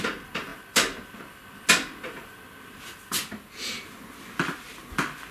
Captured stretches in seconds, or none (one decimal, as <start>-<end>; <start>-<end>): 0.0-5.3